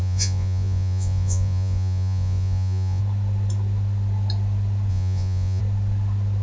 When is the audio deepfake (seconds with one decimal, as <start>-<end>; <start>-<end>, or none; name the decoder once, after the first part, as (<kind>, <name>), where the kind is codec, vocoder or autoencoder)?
0.0-3.0 (vocoder, Vocos); 4.9-5.6